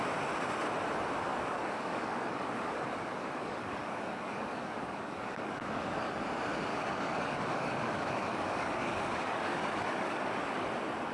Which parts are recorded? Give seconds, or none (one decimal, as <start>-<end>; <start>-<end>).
0.0-1.3; 6.1-6.7; 10.7-11.1